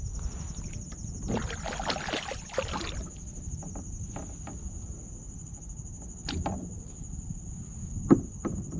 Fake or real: real